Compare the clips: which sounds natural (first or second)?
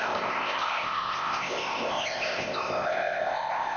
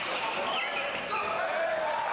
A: second